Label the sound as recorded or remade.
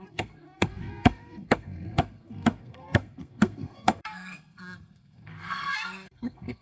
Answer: remade